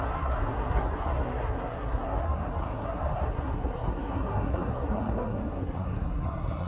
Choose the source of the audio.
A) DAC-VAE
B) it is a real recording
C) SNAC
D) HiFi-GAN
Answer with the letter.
C